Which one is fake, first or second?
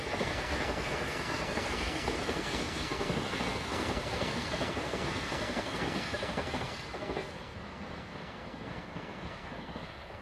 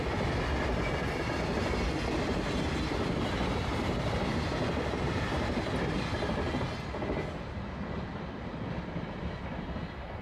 first